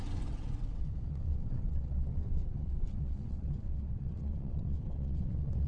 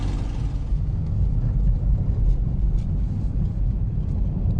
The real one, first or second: second